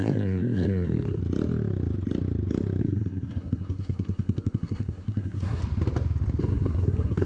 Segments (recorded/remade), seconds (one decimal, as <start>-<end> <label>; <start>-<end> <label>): 0.0-1.2 remade; 1.2-2.8 recorded; 2.8-5.6 remade; 5.6-6.4 recorded; 6.4-7.3 remade